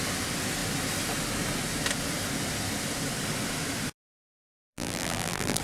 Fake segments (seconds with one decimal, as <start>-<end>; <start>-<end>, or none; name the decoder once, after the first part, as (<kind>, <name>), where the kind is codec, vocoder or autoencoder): 4.5-5.6 (vocoder, BigVGAN v2)